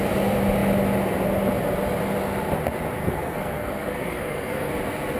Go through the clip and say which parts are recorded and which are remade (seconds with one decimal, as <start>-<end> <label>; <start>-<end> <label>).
0.0-3.0 recorded; 3.0-4.7 remade; 4.7-5.2 recorded